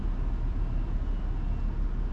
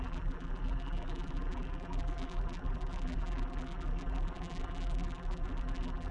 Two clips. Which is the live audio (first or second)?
first